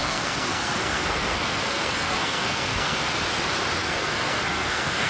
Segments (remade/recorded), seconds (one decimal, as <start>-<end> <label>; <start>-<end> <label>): 0.0-3.1 remade; 3.1-3.8 recorded; 3.8-5.1 remade